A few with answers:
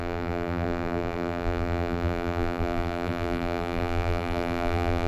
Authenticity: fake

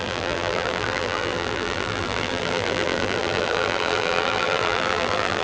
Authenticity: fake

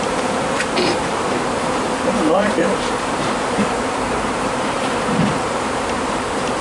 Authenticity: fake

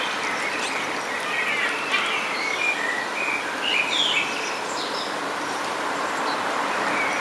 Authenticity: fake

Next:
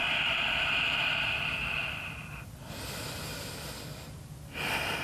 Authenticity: fake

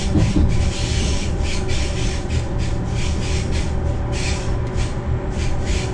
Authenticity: real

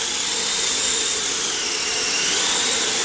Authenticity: real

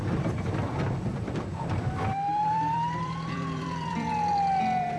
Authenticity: fake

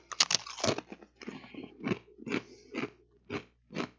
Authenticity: real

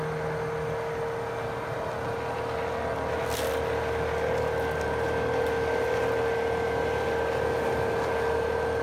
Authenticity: real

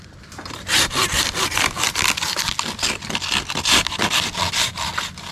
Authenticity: real